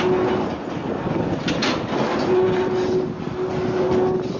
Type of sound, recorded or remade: recorded